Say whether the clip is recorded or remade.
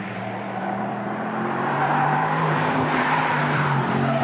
remade